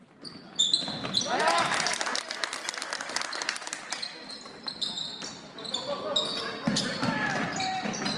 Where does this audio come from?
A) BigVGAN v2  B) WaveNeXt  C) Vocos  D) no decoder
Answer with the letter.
D